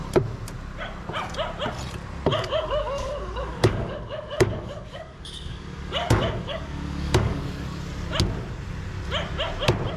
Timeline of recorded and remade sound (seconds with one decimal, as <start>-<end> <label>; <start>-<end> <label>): 0.0-2.3 recorded; 2.3-7.4 remade; 7.4-10.0 recorded